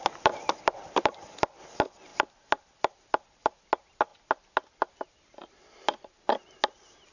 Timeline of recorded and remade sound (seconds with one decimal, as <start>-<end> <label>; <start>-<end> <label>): 0.0-7.1 recorded

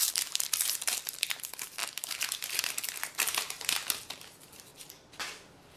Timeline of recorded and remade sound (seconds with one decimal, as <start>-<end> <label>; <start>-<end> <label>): 0.0-4.7 remade; 4.7-5.8 recorded